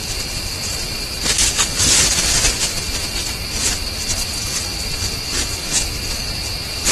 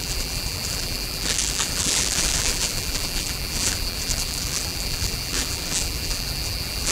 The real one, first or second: first